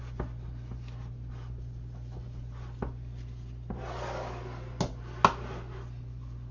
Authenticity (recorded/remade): recorded